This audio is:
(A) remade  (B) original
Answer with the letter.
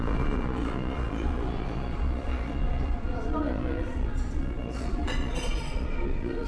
A